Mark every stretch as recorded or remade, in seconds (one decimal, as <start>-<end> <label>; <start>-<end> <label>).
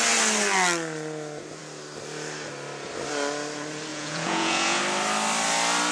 0.0-3.9 recorded; 3.9-4.8 remade; 4.8-5.9 recorded